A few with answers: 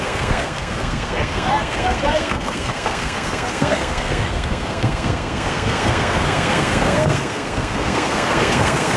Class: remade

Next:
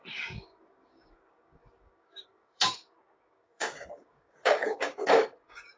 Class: remade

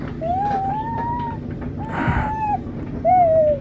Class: remade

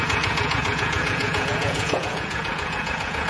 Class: remade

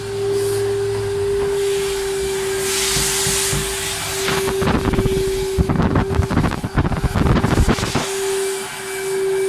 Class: recorded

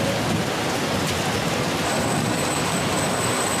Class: recorded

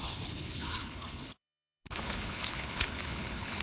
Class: remade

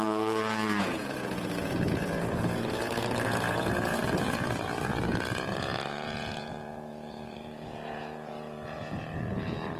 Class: remade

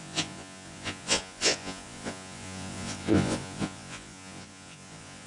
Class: remade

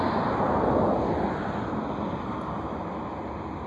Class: recorded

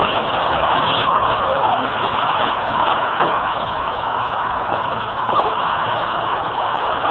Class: remade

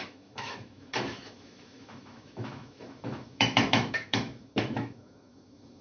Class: remade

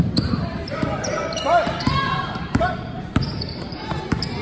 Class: remade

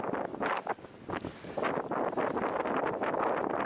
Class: recorded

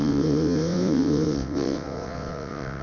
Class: remade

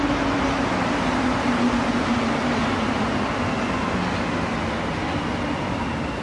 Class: recorded